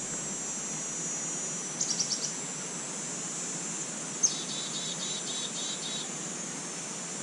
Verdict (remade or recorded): recorded